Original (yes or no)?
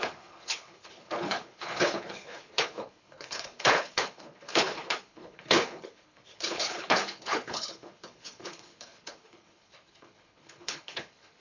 no